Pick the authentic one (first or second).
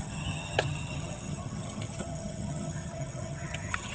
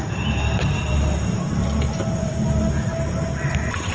second